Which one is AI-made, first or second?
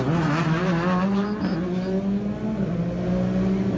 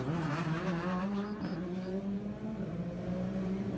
second